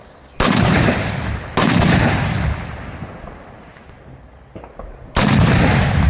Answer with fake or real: real